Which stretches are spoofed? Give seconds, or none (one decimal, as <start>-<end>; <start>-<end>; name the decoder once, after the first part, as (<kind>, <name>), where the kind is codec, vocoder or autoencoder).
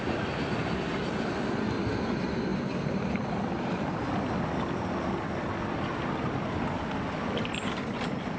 none